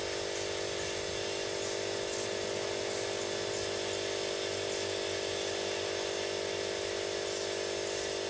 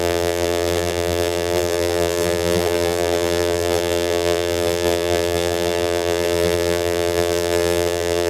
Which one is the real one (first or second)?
first